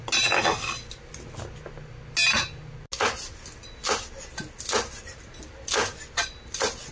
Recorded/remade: recorded